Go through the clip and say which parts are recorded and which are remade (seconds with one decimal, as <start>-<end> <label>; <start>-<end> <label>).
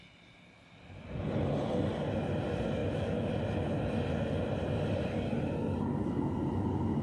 0.0-2.8 recorded; 2.8-3.3 remade; 3.3-7.0 recorded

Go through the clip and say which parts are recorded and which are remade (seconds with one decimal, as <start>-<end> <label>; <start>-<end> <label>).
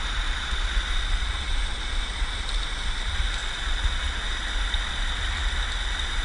0.0-6.2 recorded